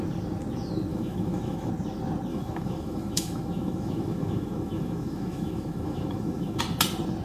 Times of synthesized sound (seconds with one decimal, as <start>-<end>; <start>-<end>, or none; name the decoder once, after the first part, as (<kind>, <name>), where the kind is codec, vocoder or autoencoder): 0.9-1.7 (autoencoder, DAC-VAE); 2.3-6.6